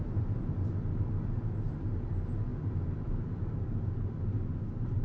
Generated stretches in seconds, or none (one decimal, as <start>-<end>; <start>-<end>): none